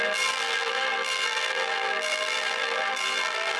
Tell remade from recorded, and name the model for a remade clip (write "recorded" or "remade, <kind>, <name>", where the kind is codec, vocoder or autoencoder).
remade, vocoder, BigVGAN v2